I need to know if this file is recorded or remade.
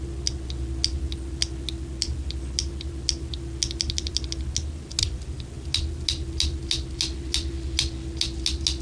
recorded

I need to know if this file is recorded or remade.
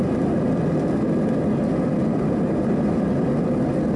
recorded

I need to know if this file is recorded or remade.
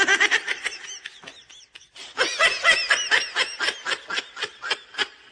recorded